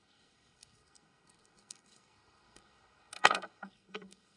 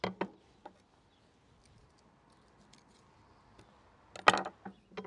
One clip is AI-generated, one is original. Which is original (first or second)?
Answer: second